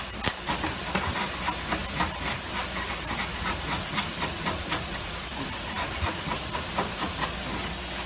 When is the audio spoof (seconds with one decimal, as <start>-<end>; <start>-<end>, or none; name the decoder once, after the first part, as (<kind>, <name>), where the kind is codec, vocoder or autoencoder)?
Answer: 3.3-7.1 (vocoder, Vocos)